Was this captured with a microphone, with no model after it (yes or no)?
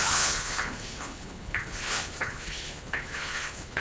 no